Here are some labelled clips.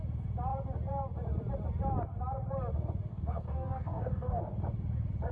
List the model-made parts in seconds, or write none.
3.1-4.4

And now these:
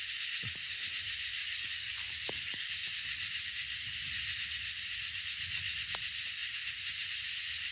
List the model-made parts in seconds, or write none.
1.4-2.7

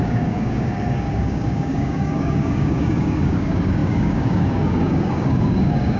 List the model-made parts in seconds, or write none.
0.0-6.0

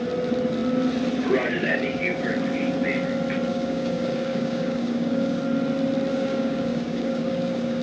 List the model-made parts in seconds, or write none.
1.6-2.3; 3.5-5.4; 6.1-7.8

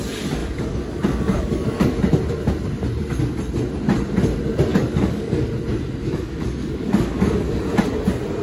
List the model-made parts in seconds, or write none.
0.4-2.0; 4.7-5.4; 6.0-7.6

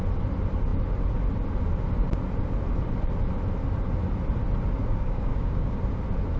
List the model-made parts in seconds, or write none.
4.8-5.8

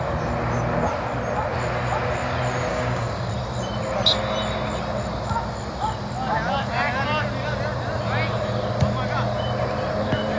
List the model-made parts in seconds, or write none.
2.7-3.3

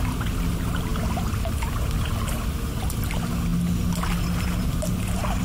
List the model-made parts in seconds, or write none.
none